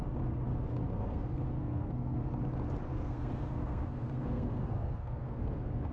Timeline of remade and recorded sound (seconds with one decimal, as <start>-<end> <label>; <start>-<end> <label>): 0.0-0.9 recorded; 0.9-2.3 remade; 2.3-2.9 recorded; 2.9-5.9 remade